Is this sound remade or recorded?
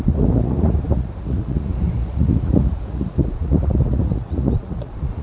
remade